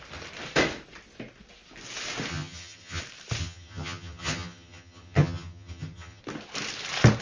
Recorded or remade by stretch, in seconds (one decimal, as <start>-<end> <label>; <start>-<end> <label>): 0.0-2.3 recorded; 2.3-3.0 remade; 3.0-3.4 recorded; 3.4-6.2 remade; 6.2-7.2 recorded